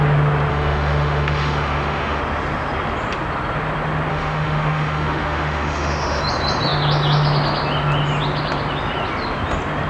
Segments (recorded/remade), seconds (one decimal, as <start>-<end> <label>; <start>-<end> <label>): 0.0-0.5 recorded; 0.5-2.2 remade; 2.2-4.1 recorded; 4.1-6.2 remade; 6.2-9.9 recorded